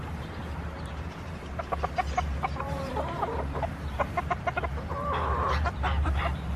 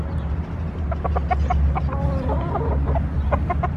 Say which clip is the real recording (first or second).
second